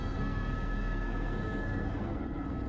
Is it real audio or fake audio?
fake